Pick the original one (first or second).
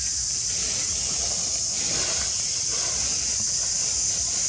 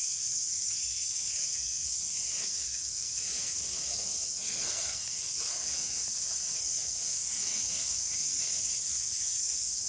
first